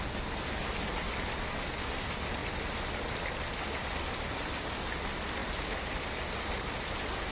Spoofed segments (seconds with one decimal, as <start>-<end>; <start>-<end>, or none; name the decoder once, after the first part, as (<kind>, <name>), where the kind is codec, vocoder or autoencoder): none